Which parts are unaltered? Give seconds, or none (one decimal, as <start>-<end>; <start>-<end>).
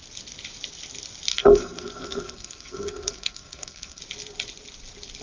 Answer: 0.0-1.3; 4.0-5.2